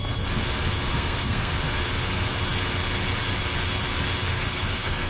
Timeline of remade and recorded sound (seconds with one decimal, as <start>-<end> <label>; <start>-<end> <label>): 0.0-0.9 recorded; 0.9-1.5 remade; 1.5-4.3 recorded; 4.3-5.1 remade